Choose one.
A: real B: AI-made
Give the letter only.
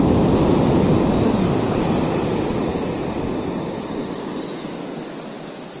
A